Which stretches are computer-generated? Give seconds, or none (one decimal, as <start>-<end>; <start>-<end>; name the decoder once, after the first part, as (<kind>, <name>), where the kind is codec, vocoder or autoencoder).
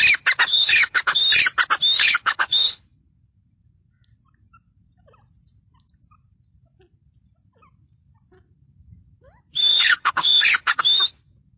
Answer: 0.5-1.2 (codec, HILCodec); 2.0-2.8; 9.7-10.8